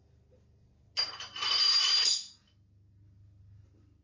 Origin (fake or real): real